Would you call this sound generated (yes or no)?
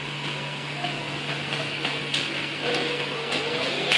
yes